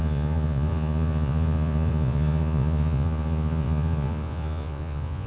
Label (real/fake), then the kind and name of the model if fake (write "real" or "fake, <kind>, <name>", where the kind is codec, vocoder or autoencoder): fake, vocoder, Vocos